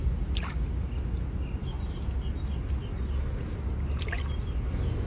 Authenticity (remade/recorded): recorded